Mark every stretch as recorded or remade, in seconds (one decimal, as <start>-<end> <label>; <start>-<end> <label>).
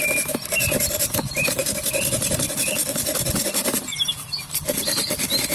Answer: 0.0-3.9 recorded; 3.9-5.0 remade; 5.0-5.5 recorded